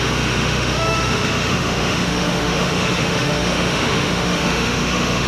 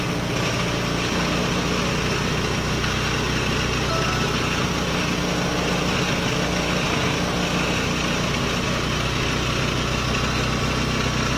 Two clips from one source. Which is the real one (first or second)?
second